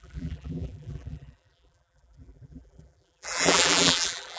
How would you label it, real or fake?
fake